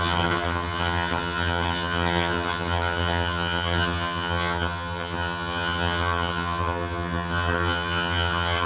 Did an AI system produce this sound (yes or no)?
yes